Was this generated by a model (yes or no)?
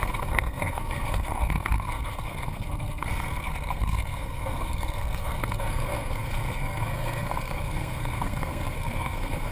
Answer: yes